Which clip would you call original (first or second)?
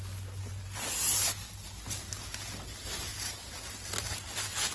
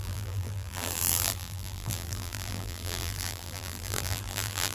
first